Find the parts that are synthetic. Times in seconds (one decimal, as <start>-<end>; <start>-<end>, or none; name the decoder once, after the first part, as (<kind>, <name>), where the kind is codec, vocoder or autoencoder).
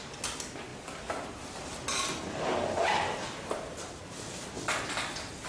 0.7-4.0 (vocoder, BigVGAN v2)